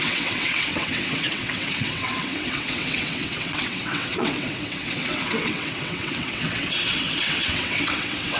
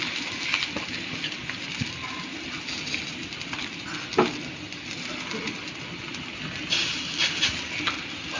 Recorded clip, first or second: second